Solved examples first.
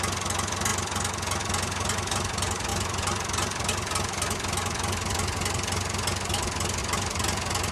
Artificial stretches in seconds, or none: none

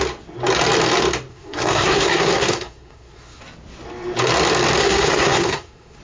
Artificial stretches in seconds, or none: 1.3-3.4 (codec, SNAC); 4.8-6.0

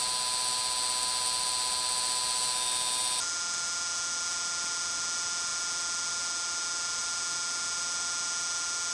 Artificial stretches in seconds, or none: none

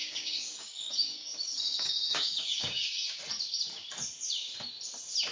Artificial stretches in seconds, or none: 0.0-3.2 (codec, DAC)

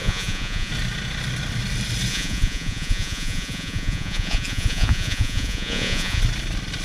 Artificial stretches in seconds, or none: 0.0-0.7 (vocoder, Vocos); 2.1-6.2